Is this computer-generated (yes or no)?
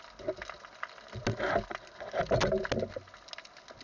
no